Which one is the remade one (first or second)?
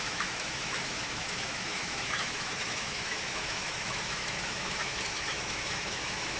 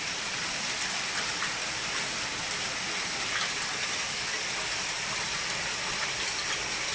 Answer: first